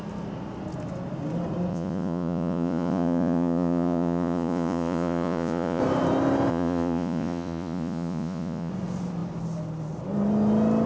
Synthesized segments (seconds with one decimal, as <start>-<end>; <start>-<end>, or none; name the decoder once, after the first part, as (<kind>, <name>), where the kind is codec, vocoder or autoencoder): 1.7-5.8 (vocoder, Vocos); 6.5-8.7